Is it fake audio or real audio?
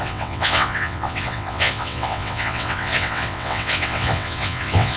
fake